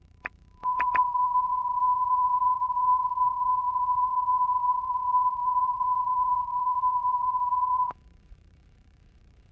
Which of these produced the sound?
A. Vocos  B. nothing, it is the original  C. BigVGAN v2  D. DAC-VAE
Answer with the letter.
A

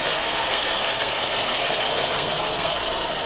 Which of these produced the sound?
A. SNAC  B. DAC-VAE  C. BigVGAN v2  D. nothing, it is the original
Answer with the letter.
A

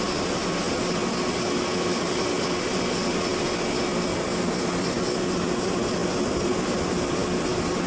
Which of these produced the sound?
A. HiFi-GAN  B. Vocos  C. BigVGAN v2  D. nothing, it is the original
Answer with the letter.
D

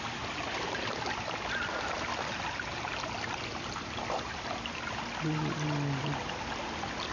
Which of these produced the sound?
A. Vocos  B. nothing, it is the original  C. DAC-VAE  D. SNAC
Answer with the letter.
B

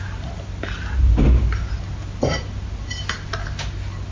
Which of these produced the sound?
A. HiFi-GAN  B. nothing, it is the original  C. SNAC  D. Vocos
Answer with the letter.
B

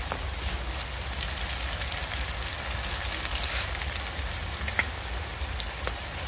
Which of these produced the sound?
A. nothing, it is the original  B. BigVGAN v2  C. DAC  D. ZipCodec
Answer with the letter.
A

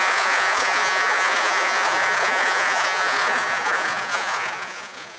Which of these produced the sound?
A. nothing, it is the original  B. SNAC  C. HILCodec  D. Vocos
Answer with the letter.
D